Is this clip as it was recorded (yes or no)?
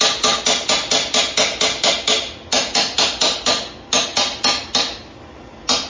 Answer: yes